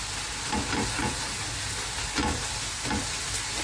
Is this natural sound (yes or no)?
yes